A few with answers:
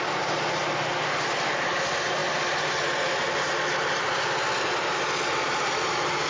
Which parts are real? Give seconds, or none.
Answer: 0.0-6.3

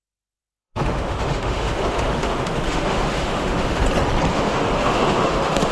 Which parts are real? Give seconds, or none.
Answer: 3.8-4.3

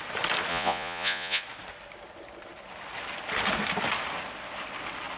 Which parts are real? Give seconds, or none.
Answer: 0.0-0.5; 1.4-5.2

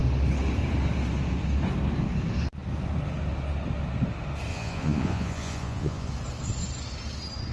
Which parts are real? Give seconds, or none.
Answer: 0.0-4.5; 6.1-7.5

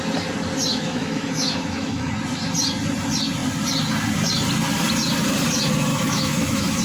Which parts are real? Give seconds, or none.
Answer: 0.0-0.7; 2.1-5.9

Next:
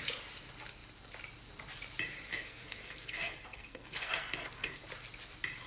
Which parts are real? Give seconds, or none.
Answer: 0.0-2.3; 4.8-5.7

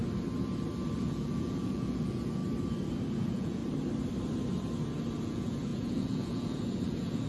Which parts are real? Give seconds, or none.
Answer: 0.0-1.0; 2.4-3.1; 3.6-5.2